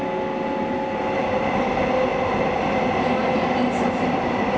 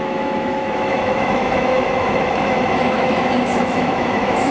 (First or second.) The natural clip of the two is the first